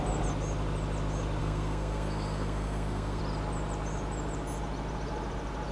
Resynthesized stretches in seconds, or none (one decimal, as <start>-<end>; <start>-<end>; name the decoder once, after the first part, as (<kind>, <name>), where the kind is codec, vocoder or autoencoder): 1.4-3.2 (codec, SNAC)